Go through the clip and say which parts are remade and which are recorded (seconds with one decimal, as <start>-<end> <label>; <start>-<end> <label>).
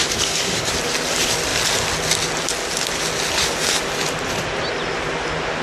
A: 0.0-0.7 remade; 0.7-5.6 recorded